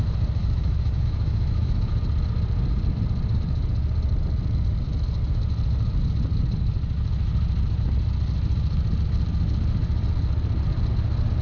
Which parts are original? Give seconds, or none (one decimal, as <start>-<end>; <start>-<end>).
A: 0.0-0.4; 1.9-11.4